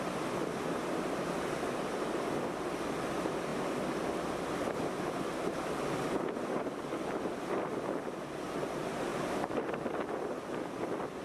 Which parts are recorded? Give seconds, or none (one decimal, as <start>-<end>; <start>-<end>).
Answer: 0.0-9.1; 9.6-11.2